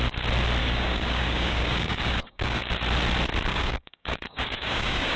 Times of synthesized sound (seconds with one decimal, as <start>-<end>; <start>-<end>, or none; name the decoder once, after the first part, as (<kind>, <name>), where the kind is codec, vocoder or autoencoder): 0.6-2.7 (codec, DAC); 3.5-5.2